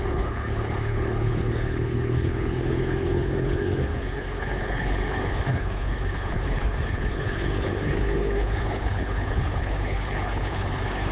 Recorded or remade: remade